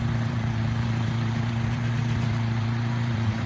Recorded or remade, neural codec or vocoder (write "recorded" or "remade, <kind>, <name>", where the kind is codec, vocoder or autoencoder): remade, vocoder, BigVGAN v2